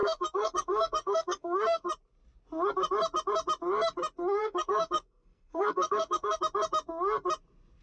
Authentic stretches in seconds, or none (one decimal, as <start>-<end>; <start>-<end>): 1.9-4.4; 6.4-7.8